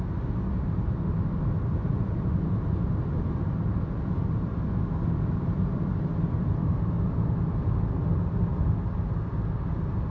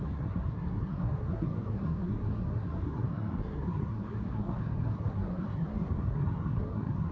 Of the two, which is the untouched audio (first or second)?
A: first